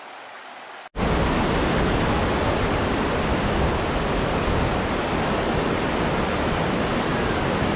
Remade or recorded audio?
recorded